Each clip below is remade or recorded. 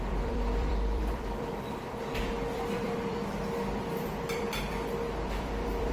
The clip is remade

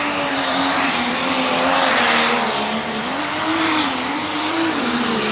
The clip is remade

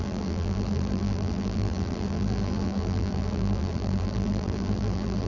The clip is remade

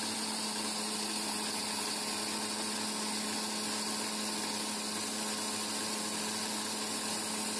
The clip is recorded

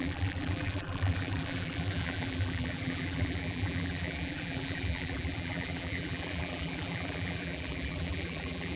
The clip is remade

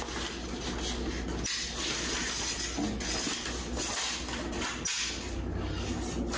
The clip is recorded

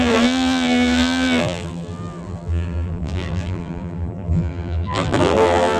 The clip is remade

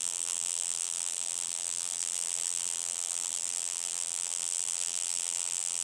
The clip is remade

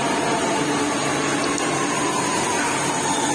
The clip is recorded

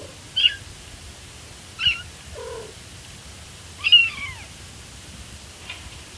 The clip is recorded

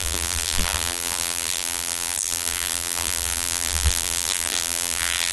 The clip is remade